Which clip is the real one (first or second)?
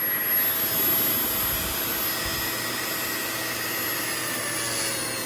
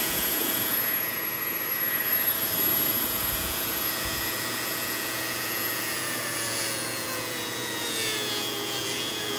first